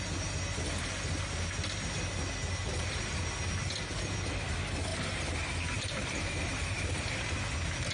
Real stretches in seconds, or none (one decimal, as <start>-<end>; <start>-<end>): 0.0-2.6; 3.2-4.9; 7.3-7.9